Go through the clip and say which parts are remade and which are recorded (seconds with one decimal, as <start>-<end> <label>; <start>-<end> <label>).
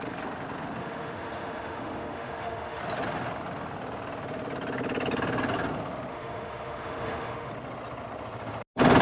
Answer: 0.0-0.8 recorded; 0.8-2.8 remade; 2.8-6.1 recorded; 6.1-7.5 remade; 7.5-9.0 recorded